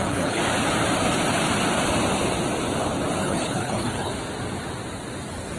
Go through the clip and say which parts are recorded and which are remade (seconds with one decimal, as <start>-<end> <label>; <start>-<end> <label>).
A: 0.0-0.4 remade; 0.4-3.2 recorded; 3.2-4.1 remade; 4.1-5.6 recorded